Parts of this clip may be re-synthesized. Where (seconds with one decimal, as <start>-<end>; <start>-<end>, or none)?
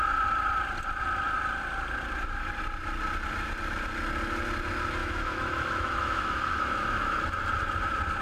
5.0-7.2